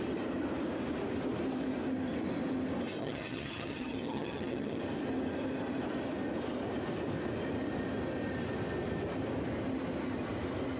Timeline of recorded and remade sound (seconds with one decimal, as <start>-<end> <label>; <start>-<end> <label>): 0.0-3.0 recorded; 3.0-4.8 remade; 4.8-10.8 recorded